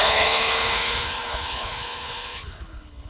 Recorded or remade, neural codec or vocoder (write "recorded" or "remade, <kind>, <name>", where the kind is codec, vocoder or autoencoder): remade, codec, HILCodec